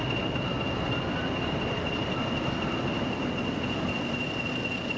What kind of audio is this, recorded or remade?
recorded